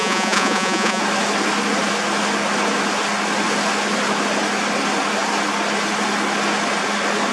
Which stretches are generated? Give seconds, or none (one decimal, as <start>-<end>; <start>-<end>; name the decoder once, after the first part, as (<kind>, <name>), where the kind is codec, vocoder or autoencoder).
0.0-1.0 (vocoder, Vocos)